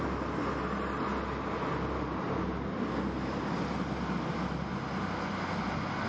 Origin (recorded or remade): recorded